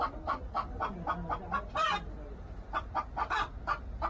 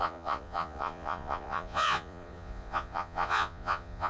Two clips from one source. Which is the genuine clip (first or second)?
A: first